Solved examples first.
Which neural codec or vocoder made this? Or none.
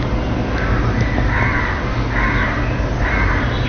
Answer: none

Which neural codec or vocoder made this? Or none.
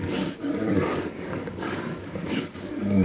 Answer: codec, DAC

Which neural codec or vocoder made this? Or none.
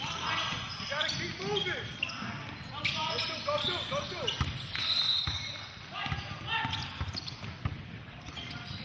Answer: none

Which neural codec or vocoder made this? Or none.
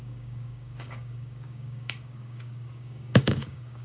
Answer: codec, DAC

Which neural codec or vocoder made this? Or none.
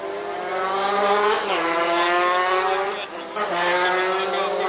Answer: none